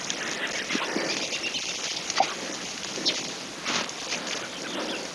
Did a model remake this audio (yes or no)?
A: no